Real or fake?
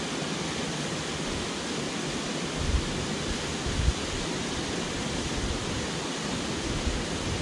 real